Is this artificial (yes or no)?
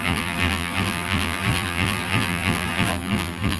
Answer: yes